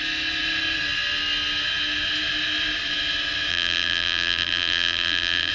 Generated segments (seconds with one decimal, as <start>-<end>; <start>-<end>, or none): 3.5-5.5